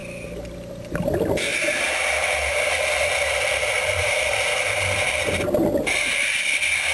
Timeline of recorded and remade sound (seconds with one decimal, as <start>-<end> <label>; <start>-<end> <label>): 0.0-6.9 recorded